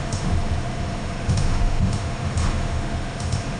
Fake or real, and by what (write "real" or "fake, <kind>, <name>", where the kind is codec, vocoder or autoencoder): fake, autoencoder, DAC-VAE